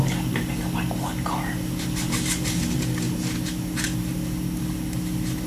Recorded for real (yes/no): yes